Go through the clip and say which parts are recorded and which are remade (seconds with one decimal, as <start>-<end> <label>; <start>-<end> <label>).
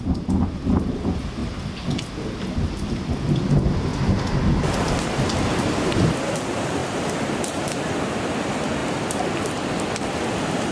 0.0-3.9 remade; 3.9-5.7 recorded; 5.7-6.8 remade; 6.8-8.4 recorded; 8.4-8.8 remade; 8.8-9.7 recorded; 9.7-10.7 remade